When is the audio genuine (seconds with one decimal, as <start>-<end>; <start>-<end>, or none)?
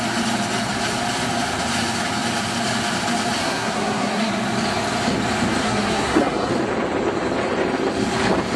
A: 0.0-3.4; 4.3-5.6; 6.5-8.6